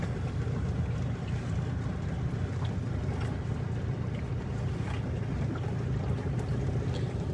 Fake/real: real